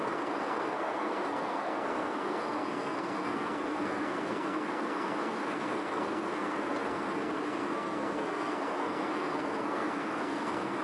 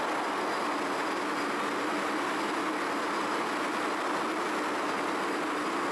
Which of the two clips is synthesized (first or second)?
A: first